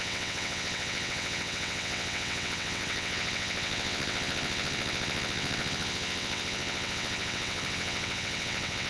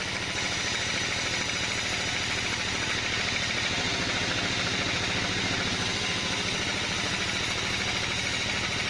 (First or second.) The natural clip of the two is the second